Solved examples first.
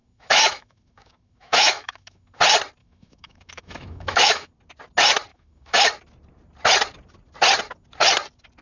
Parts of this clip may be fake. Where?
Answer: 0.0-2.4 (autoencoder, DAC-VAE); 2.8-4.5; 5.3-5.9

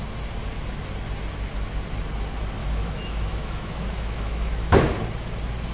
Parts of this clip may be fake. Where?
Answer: 2.6-4.8 (autoencoder, DAC-VAE)

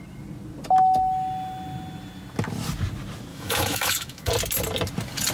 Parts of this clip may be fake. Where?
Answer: 3.3-4.3 (autoencoder, DAC-VAE)

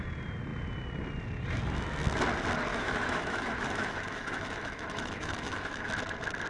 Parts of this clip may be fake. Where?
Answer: 2.7-5.9 (autoencoder, DAC-VAE)

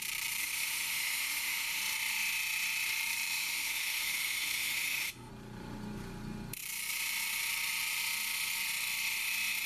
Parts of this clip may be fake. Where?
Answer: 0.4-1.8 (autoencoder, DAC-VAE); 3.4-5.3

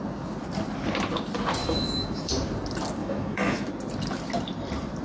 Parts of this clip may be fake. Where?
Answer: 1.6-2.3 (autoencoder, DAC-VAE); 3.0-3.7